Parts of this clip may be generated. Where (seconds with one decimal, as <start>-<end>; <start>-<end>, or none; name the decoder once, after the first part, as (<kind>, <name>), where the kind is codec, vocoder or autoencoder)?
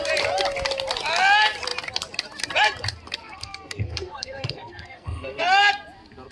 3.2-5.4 (codec, SNAC)